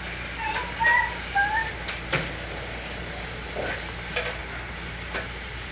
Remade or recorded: recorded